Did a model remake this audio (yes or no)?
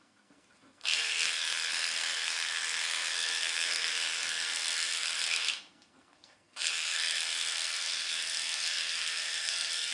yes